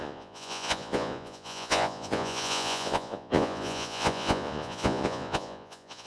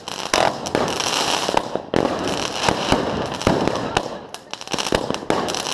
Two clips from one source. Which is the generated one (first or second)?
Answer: first